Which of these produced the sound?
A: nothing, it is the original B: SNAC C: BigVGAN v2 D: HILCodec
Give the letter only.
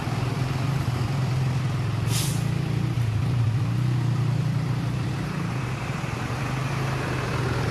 C